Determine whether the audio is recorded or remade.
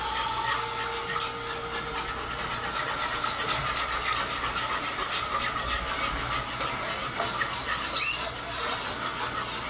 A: recorded